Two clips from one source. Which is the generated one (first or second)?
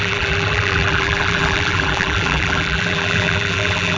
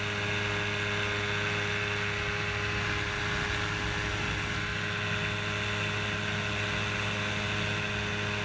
first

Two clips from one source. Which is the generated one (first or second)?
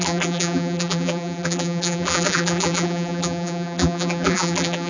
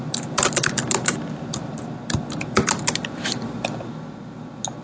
first